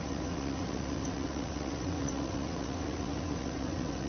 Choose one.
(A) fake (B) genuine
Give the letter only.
A